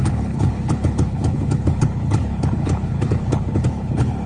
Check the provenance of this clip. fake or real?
fake